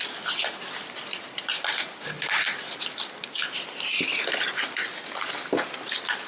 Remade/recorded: recorded